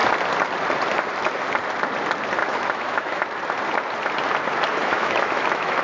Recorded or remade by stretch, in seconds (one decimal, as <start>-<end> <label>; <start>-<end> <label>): 0.0-2.4 recorded; 2.4-3.2 remade; 3.2-4.8 recorded; 4.8-5.8 remade